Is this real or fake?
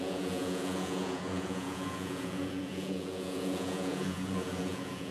fake